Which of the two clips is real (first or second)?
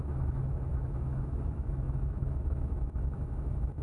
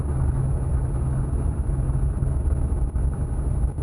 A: second